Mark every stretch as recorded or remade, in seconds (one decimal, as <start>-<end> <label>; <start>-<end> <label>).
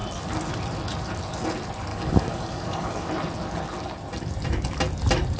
0.0-1.9 recorded; 1.9-3.1 remade; 3.1-5.4 recorded